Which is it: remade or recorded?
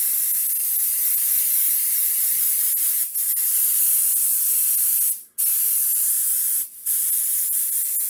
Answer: recorded